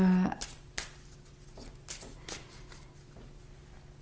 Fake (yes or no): no